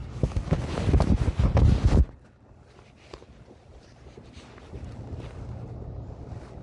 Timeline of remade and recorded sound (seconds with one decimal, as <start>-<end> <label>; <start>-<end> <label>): 0.0-6.6 recorded